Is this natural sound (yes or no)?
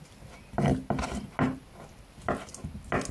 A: yes